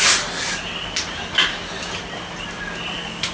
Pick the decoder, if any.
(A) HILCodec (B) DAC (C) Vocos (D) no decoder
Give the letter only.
D